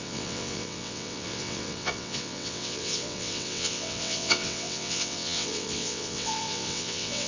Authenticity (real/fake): fake